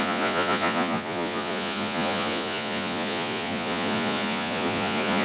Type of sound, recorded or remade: remade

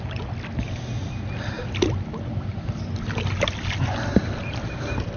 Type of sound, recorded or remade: recorded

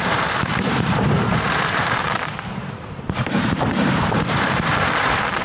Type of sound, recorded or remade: remade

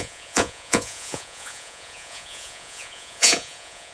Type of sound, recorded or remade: remade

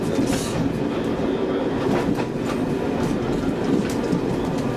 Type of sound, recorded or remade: recorded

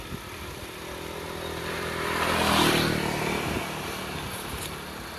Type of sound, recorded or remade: recorded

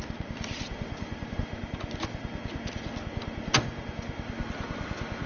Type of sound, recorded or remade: recorded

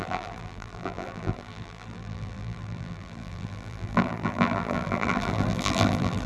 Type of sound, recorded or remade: remade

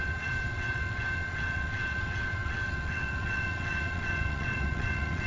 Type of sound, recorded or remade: remade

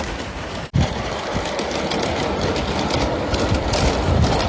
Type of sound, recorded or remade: remade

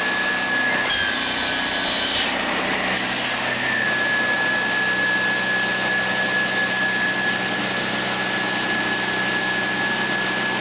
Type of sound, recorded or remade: recorded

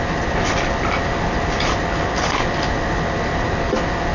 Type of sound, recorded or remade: recorded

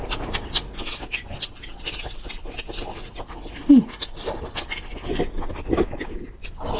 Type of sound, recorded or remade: recorded